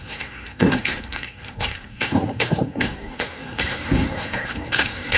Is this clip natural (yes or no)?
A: no